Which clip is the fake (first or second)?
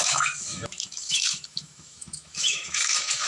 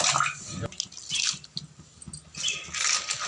first